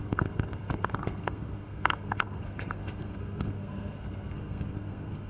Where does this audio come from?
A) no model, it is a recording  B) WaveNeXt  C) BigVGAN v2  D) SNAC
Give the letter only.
D